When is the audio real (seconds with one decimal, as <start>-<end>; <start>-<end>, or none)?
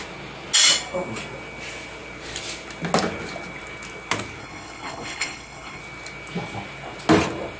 0.0-4.4; 5.8-7.6